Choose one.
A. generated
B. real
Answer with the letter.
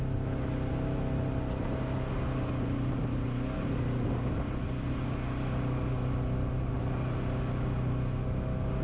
B